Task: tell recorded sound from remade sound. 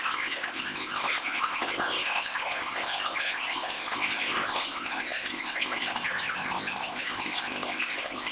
remade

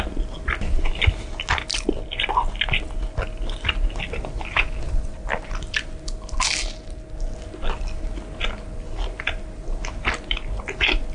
recorded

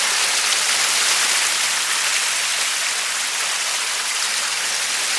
recorded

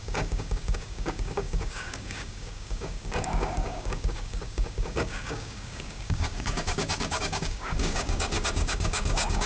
remade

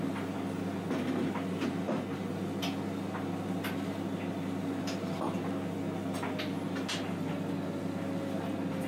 recorded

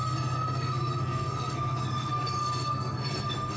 remade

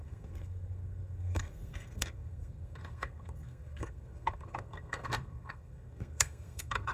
remade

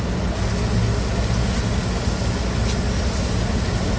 recorded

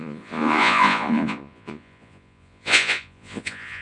remade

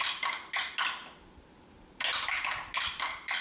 recorded